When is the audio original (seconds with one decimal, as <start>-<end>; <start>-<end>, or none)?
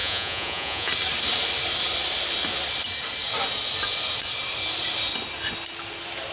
0.9-6.3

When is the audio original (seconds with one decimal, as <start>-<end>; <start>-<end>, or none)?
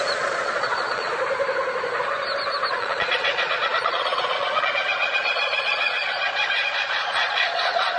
1.1-2.7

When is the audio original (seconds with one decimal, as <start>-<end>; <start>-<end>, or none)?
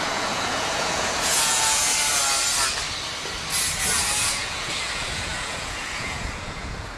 1.9-4.2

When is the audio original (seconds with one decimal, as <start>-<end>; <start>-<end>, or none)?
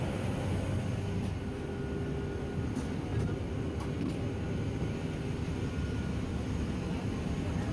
0.0-7.7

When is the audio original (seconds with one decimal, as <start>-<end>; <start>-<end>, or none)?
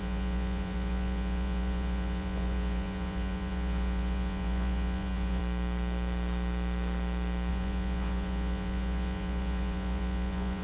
5.4-7.5